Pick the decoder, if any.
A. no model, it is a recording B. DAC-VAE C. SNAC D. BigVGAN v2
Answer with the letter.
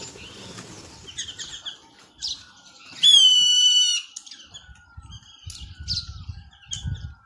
A